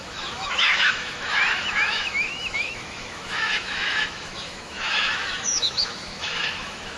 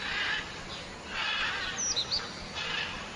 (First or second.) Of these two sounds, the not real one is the first